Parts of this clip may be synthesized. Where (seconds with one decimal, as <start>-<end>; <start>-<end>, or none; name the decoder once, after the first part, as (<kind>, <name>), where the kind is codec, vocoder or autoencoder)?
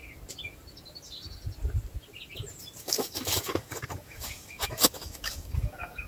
2.8-6.1 (codec, DAC)